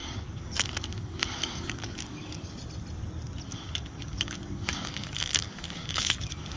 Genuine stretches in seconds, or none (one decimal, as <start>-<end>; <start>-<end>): 2.6-3.5